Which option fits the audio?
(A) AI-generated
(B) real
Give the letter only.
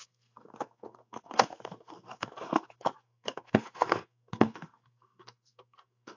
A